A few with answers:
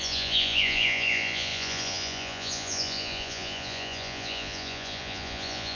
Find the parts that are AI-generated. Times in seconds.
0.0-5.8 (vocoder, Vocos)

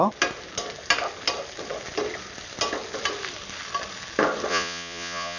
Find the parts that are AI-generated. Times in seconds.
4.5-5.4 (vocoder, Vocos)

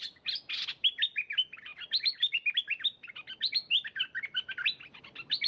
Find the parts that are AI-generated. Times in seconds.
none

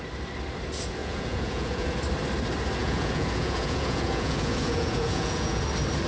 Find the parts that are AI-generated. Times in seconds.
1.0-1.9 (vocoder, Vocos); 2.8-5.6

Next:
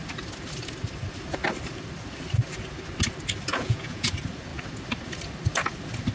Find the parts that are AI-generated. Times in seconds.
3.5-4.1 (vocoder, Vocos)

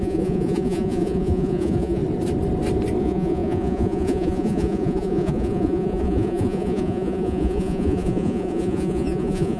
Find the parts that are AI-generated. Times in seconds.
0.0-2.0 (vocoder, Vocos); 3.0-9.6

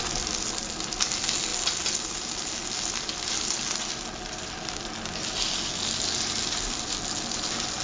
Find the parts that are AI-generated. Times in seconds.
none